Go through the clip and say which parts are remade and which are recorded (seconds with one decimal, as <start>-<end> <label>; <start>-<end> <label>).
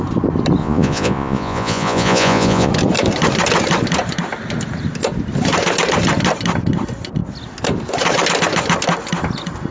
0.0-0.6 recorded; 0.6-2.7 remade; 2.7-9.7 recorded